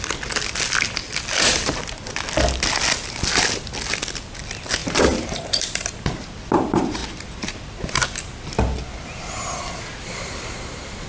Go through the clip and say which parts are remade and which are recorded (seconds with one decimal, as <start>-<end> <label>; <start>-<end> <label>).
0.0-4.8 recorded; 4.8-5.8 remade; 5.8-11.1 recorded